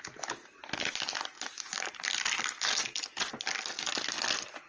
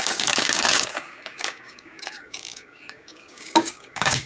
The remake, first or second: second